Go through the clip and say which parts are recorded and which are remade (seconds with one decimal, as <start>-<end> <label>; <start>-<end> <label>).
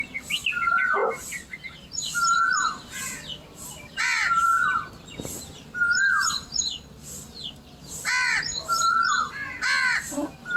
0.0-10.6 recorded